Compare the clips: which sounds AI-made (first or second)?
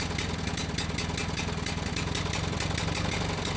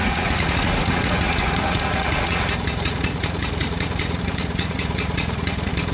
second